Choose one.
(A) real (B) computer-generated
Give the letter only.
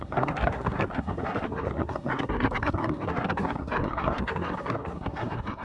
B